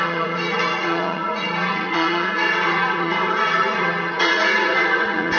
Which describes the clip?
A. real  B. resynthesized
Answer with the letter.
B